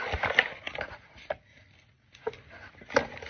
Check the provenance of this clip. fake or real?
real